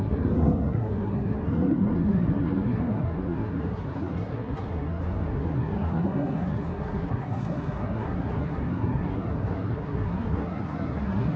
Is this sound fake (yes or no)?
yes